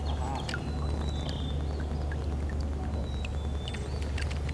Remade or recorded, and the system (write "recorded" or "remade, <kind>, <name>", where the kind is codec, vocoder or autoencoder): recorded